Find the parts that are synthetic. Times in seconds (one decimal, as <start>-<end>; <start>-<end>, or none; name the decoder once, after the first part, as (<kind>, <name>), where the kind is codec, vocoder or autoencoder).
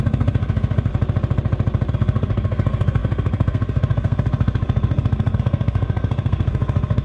0.0-0.9 (codec, SNAC); 1.9-7.0